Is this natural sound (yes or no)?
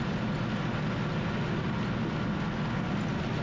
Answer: yes